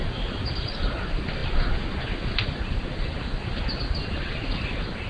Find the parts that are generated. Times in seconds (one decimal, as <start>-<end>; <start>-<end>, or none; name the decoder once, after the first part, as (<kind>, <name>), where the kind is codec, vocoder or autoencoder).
none